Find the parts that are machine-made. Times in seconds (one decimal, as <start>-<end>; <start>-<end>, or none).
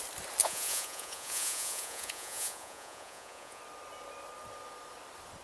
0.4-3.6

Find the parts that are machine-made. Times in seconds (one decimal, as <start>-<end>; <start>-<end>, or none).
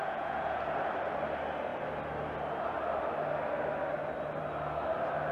0.0-0.6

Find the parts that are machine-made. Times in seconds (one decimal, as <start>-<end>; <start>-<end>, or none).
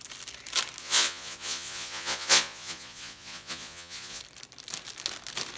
0.8-4.2